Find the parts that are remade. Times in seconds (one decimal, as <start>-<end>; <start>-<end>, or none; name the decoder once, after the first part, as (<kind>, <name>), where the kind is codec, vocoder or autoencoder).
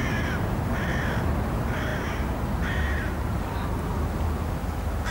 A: none